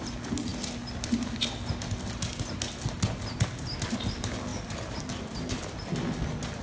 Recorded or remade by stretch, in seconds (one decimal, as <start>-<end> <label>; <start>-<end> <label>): 0.0-6.6 recorded

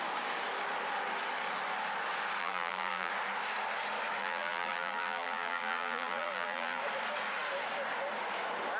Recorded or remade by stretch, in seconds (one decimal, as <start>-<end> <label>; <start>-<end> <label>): 0.0-2.4 recorded; 2.4-3.1 remade; 3.1-4.2 recorded; 4.2-6.8 remade; 6.8-8.8 recorded

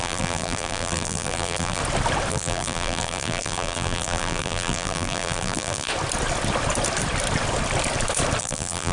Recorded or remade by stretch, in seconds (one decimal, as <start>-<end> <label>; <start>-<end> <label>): 0.0-1.8 remade; 1.8-2.3 recorded; 2.3-5.9 remade; 5.9-8.4 recorded; 8.4-8.9 remade

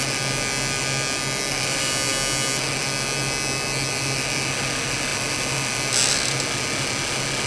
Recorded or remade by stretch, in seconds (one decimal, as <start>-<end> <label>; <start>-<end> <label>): 0.0-7.5 recorded

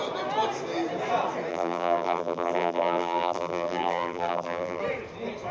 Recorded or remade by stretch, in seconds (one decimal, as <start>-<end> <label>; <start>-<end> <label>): 0.0-1.5 recorded; 1.5-4.8 remade; 4.8-5.5 recorded

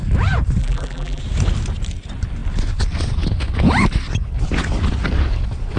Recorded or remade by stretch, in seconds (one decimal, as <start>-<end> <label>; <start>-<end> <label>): 0.0-0.6 recorded; 0.6-1.2 remade; 1.2-5.8 recorded

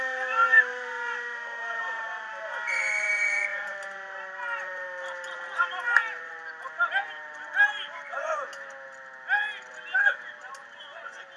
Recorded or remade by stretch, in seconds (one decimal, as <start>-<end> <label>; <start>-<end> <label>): 0.0-8.5 remade; 8.5-10.1 recorded; 10.1-11.4 remade